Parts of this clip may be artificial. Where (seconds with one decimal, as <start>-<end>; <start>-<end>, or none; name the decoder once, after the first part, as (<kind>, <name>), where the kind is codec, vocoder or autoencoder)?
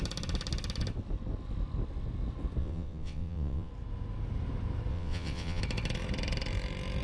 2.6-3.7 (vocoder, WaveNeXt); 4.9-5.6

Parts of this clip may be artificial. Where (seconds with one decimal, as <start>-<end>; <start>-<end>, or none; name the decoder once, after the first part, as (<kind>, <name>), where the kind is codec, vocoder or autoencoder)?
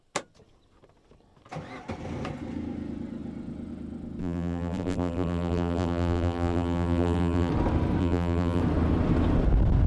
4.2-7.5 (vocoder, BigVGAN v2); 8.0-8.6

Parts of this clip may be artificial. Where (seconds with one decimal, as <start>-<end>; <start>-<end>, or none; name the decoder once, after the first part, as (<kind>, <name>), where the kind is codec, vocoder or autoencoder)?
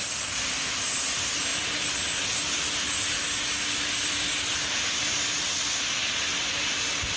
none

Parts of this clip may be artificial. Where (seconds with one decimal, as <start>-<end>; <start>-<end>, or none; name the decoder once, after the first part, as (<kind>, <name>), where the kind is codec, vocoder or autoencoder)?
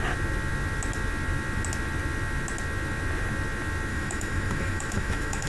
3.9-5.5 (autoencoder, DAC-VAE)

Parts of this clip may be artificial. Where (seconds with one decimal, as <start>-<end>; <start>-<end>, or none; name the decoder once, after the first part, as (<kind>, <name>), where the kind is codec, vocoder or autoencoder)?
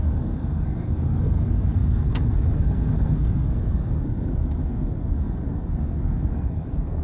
0.0-7.0 (codec, SNAC)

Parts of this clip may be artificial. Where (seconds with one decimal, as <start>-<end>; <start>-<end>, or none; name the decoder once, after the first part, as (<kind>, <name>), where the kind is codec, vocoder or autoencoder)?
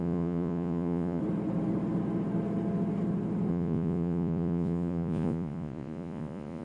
0.0-1.2 (vocoder, Vocos); 3.5-6.6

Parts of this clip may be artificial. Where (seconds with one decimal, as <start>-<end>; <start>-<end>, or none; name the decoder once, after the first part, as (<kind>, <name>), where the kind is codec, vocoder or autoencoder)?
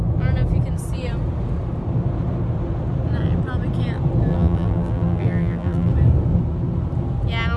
4.3-5.9 (vocoder, BigVGAN v2)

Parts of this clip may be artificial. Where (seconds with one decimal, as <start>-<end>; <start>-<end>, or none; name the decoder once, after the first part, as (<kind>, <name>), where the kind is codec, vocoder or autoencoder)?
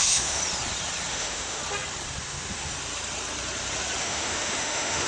0.0-0.4 (autoencoder, DAC-VAE); 1.1-1.6; 2.2-2.7; 4.0-5.1